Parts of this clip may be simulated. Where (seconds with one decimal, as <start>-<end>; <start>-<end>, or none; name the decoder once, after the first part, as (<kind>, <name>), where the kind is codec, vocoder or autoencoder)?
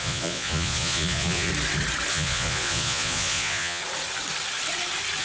0.0-1.5 (vocoder, Vocos); 2.1-3.8